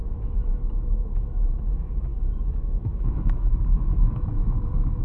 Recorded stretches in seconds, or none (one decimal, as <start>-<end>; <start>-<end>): none